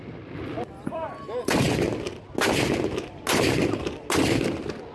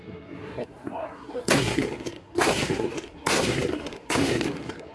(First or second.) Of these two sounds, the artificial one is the second